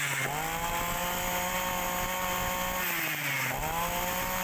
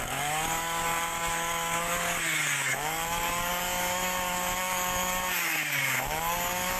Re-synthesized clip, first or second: second